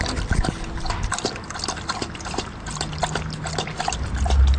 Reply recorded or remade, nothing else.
recorded